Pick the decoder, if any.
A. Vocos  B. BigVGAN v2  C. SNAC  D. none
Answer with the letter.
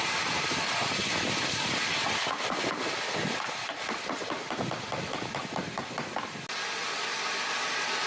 D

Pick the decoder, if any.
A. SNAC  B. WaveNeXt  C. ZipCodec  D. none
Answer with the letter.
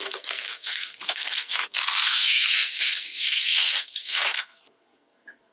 A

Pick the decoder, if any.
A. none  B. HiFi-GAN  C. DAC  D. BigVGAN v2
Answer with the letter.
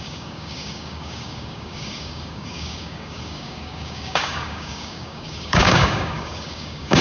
C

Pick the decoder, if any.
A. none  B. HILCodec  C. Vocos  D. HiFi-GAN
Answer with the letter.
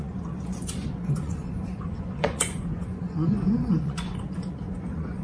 C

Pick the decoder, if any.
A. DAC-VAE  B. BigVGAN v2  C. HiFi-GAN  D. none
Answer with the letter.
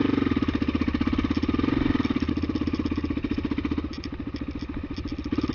D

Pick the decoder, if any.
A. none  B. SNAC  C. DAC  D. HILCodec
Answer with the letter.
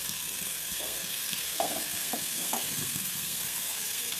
B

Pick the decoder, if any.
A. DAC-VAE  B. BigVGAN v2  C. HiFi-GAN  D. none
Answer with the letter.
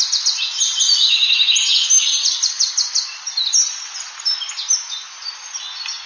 D